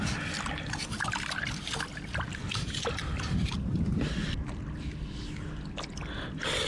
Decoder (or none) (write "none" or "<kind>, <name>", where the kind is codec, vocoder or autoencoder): none